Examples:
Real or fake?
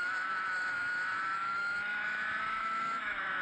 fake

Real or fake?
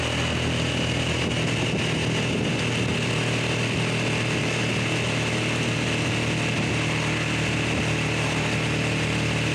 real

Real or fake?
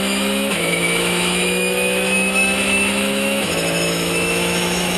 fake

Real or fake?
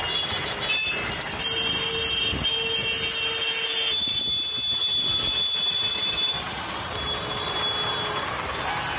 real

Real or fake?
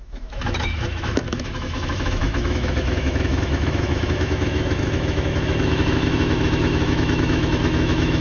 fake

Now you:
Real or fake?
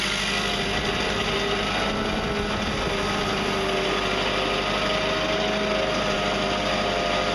real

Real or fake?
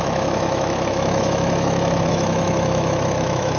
fake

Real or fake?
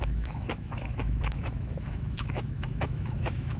fake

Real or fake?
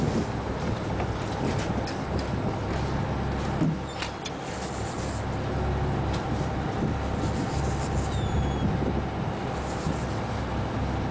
real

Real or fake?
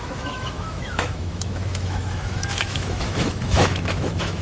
fake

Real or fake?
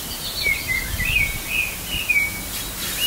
real